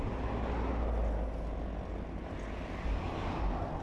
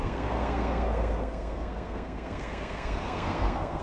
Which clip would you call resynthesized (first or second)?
second